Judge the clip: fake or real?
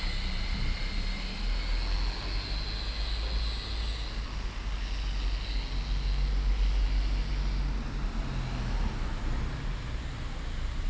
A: real